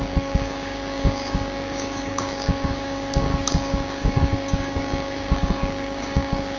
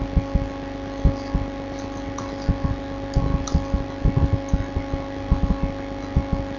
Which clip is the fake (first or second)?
first